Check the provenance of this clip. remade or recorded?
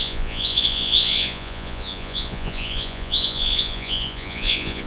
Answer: remade